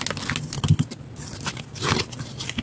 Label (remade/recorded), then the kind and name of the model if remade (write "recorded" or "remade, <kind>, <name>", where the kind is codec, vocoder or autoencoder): recorded